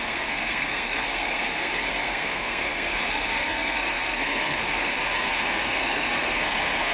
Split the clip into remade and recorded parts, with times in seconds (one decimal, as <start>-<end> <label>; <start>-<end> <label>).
0.0-6.9 remade